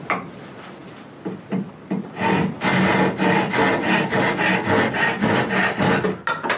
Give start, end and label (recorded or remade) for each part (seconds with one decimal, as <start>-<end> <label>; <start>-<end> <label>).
0.0-6.6 recorded